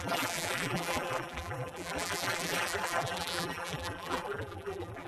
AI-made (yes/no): yes